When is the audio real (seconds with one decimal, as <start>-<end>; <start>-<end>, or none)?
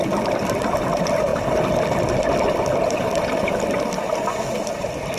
0.0-5.2